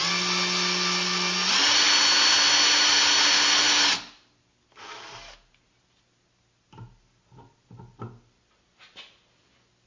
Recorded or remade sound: recorded